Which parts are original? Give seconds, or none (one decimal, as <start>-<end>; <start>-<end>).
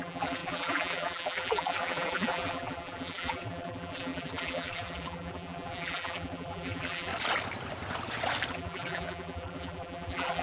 7.1-8.5